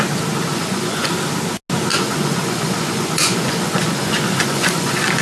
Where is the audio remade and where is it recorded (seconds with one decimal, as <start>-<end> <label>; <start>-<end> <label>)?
0.0-0.5 recorded; 0.5-1.1 remade; 1.1-1.9 recorded; 1.9-5.2 remade